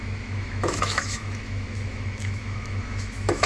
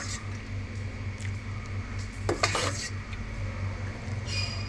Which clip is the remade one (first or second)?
first